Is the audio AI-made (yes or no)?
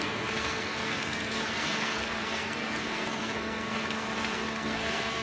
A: yes